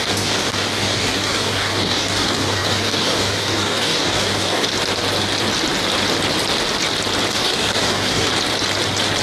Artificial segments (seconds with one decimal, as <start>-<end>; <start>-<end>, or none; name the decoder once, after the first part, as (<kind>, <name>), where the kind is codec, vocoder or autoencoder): 0.0-4.7 (codec, DAC); 7.3-8.3